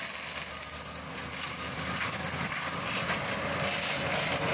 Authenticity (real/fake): real